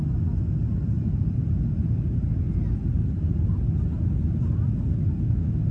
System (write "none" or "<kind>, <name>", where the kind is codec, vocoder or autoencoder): none